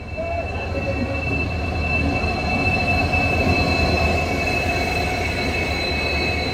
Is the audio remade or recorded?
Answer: recorded